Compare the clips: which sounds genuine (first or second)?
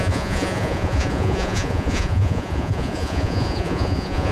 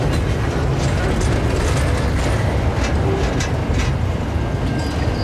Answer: second